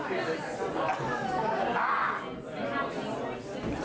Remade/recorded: recorded